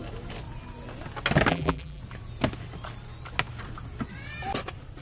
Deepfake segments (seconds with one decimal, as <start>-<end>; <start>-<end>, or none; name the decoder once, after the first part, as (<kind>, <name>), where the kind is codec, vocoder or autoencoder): 1.5-2.0 (vocoder, BigVGAN v2)